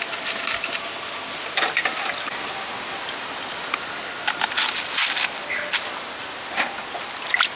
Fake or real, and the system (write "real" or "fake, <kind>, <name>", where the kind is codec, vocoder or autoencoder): real